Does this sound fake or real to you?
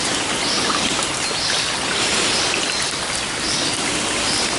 real